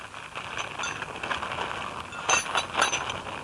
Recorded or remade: recorded